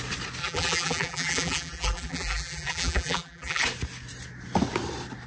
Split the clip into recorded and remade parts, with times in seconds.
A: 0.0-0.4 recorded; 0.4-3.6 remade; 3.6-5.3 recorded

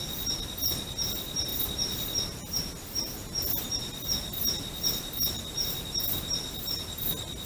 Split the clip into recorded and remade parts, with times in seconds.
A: 0.0-7.5 recorded